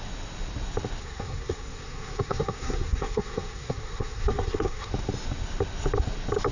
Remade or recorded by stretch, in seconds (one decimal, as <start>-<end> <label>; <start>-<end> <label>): 0.0-1.0 recorded; 1.0-4.9 remade; 4.9-6.5 recorded